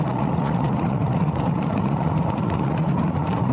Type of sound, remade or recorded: remade